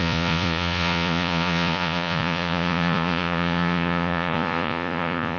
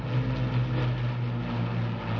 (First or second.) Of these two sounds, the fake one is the first